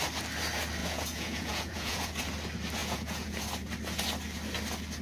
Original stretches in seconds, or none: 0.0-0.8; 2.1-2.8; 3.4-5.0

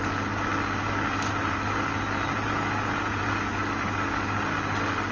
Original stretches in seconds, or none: 0.0-2.3; 3.6-5.1

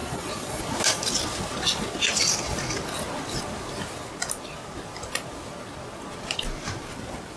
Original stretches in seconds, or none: 0.6-7.4

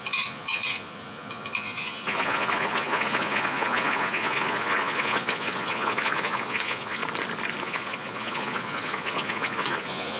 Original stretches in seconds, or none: 7.0-7.6